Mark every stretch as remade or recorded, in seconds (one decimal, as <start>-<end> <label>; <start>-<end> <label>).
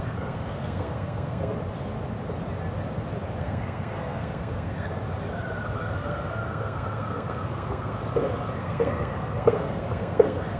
0.0-1.5 remade; 1.5-3.4 recorded; 3.4-4.9 remade; 4.9-5.8 recorded; 5.8-8.0 remade; 8.0-8.6 recorded; 8.6-10.6 remade